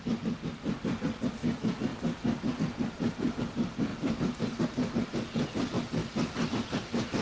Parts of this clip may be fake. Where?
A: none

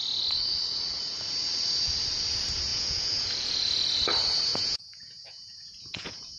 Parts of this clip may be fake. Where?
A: 2.7-3.8; 4.5-6.4

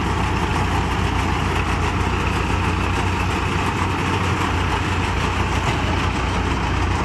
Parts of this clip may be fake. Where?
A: none